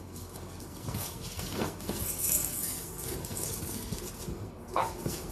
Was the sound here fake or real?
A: fake